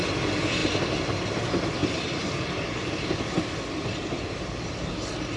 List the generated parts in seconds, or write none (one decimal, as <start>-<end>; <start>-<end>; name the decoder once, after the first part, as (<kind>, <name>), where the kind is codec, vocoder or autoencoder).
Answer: none